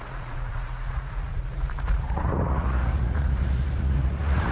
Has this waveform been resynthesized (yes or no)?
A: yes